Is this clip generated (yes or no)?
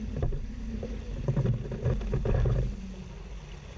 no